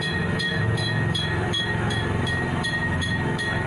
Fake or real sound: fake